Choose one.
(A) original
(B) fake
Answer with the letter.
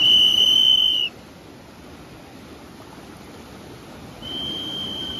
A